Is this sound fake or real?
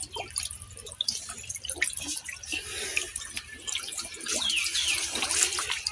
real